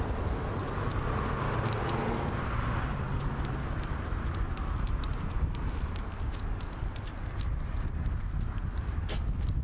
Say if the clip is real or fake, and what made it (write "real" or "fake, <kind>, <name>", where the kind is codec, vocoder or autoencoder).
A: real